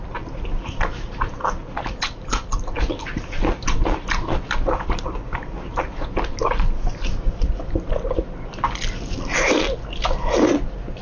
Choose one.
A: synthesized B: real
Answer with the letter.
B